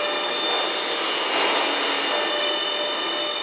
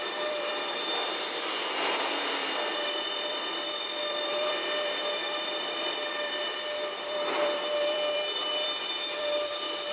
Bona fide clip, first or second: first